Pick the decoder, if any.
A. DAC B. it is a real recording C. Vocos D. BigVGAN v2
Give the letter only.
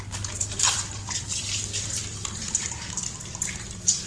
D